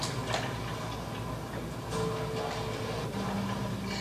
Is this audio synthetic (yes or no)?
no